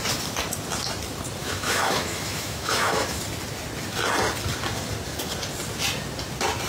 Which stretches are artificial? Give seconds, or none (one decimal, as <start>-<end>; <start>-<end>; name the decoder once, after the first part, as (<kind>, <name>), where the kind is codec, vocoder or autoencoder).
1.4-3.2 (autoencoder, DAC-VAE)